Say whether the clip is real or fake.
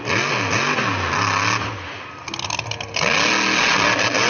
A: real